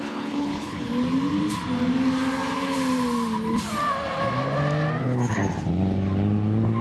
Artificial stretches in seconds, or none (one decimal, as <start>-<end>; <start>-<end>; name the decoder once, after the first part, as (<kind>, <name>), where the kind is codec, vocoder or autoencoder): 0.0-0.9 (codec, HILCodec); 5.0-5.4